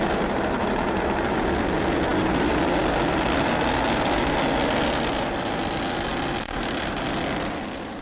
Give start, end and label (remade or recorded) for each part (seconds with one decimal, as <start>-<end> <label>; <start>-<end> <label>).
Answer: 0.0-8.0 recorded